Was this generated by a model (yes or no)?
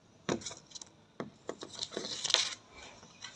no